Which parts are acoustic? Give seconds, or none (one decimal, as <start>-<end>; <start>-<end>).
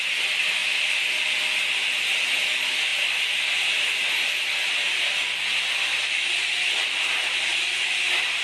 0.0-8.4